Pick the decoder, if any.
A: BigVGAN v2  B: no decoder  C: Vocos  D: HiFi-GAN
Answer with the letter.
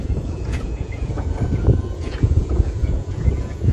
C